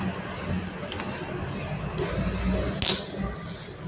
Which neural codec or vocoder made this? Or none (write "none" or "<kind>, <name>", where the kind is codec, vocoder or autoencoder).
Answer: none